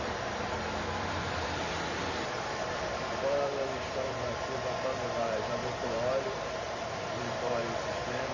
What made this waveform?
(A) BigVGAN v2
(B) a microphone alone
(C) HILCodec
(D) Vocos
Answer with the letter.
A